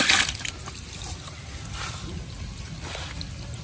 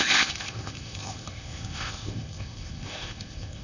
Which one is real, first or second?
first